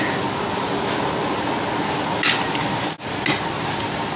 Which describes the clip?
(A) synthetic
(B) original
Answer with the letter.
B